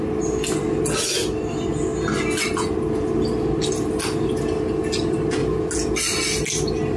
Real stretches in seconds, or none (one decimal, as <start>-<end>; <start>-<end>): 0.0-7.0